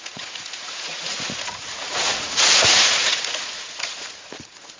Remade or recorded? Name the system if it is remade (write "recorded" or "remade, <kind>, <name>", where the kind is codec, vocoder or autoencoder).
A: remade, vocoder, Vocos